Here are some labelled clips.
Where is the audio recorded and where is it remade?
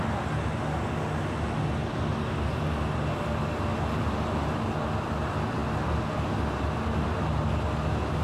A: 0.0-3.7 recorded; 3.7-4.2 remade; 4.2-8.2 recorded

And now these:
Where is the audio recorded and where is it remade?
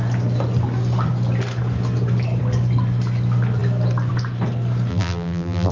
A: 0.0-4.9 recorded; 4.9-5.7 remade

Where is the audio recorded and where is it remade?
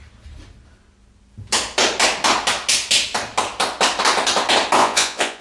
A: 0.0-4.8 recorded; 4.8-5.4 remade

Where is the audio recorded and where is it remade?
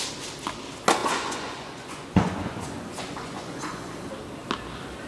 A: 0.0-1.0 recorded; 1.0-3.9 remade; 3.9-5.1 recorded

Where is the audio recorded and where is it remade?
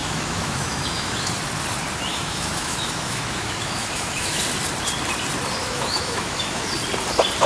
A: 0.0-1.3 remade; 1.3-2.1 recorded; 2.1-4.4 remade; 4.4-5.6 recorded; 5.6-6.7 remade; 6.7-7.5 recorded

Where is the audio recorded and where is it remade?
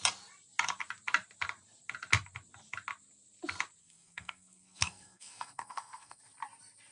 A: 0.0-3.8 recorded; 3.8-6.2 remade; 6.2-6.9 recorded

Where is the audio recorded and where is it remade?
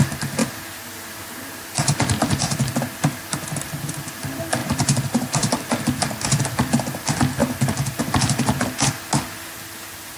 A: 0.0-4.6 recorded; 4.6-5.5 remade; 5.5-10.2 recorded